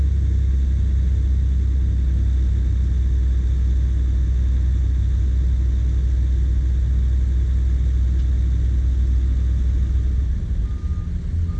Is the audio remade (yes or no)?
no